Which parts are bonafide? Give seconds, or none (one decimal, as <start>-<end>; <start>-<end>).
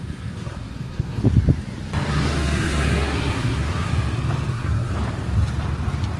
1.2-2.1; 3.9-4.5; 4.9-6.2